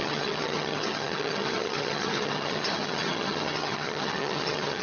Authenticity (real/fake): fake